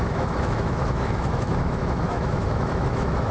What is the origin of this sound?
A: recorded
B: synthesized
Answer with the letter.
B